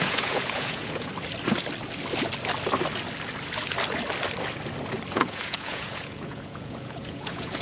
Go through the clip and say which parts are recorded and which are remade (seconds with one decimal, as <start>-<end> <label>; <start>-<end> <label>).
0.0-1.1 remade; 1.1-5.1 recorded; 5.1-7.6 remade